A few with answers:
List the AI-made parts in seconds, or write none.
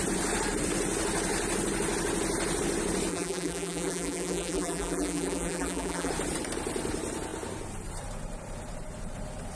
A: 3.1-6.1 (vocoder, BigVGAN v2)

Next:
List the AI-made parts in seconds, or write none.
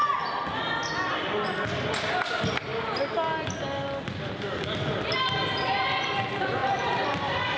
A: 1.7-2.7 (vocoder, BigVGAN v2); 6.0-7.6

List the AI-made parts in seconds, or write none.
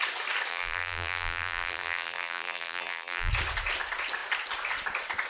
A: 0.5-3.3 (vocoder, BigVGAN v2)